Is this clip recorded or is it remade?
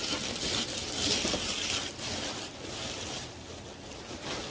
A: recorded